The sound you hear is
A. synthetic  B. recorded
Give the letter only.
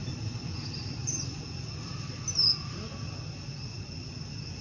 B